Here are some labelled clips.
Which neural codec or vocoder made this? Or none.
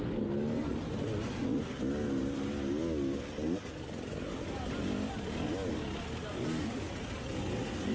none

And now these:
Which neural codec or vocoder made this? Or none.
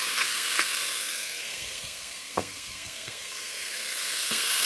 codec, SNAC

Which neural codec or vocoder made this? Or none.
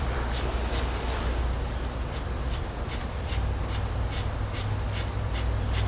vocoder, BigVGAN v2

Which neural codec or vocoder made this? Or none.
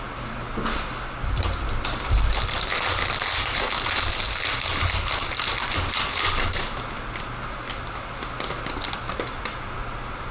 none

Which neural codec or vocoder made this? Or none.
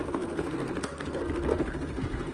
codec, SNAC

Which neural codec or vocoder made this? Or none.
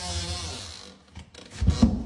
none